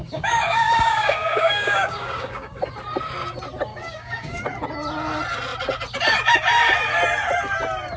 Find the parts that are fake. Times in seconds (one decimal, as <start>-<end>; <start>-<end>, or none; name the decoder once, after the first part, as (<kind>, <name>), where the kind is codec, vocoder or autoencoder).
0.0-2.6 (codec, DAC); 3.7-4.4